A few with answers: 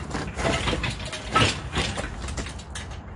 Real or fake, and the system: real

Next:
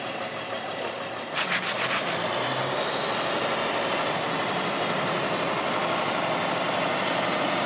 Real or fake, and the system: real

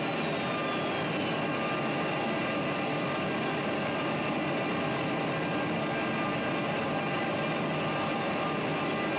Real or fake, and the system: real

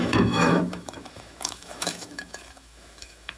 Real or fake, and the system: fake, autoencoder, DAC-VAE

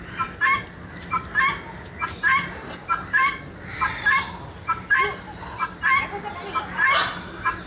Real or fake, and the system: real